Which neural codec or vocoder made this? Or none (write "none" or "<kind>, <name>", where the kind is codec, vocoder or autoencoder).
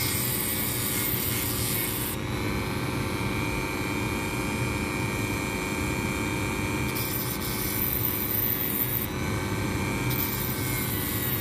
none